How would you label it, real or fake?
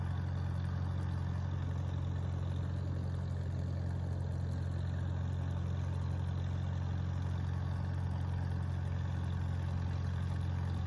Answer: real